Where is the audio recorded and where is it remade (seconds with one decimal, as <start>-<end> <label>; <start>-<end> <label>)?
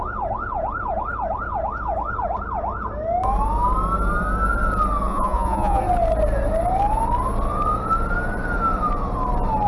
0.0-5.1 recorded; 5.1-5.8 remade; 5.8-9.7 recorded